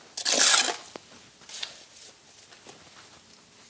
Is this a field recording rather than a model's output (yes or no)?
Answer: yes